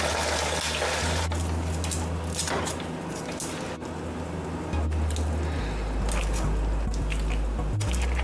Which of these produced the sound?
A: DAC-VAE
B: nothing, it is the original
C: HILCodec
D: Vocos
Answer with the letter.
B